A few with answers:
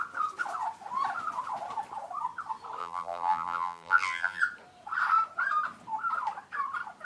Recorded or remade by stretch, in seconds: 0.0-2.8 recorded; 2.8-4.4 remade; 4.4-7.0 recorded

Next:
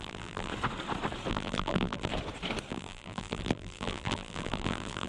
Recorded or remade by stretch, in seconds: 0.0-0.5 remade; 0.5-1.3 recorded; 1.3-2.1 remade; 2.1-2.7 recorded; 2.7-5.1 remade

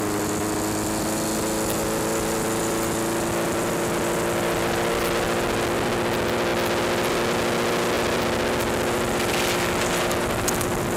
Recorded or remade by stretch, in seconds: 0.0-11.0 recorded

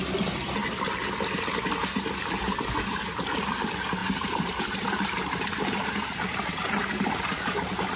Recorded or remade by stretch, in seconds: 0.0-4.0 recorded; 4.0-8.0 remade

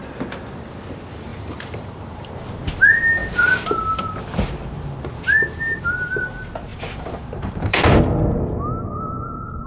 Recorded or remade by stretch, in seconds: 0.0-1.3 recorded; 1.3-2.3 remade; 2.3-3.2 recorded; 3.2-4.0 remade; 4.0-6.7 recorded; 6.7-8.0 remade; 8.0-9.7 recorded

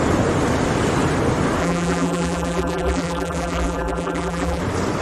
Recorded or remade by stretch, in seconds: 0.0-1.6 recorded; 1.6-4.6 remade; 4.6-5.0 recorded

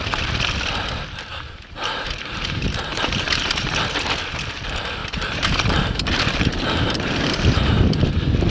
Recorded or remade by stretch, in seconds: 0.0-1.3 recorded; 1.3-3.7 remade; 3.7-5.0 recorded; 5.0-8.1 remade; 8.1-8.5 recorded